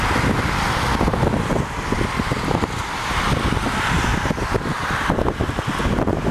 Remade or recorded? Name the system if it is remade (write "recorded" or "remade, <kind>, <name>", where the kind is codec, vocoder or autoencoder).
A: recorded